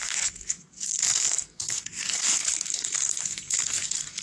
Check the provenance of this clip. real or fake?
fake